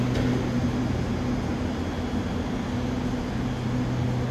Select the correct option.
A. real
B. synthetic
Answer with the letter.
A